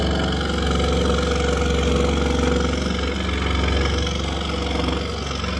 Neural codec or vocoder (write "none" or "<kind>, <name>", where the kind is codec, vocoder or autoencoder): none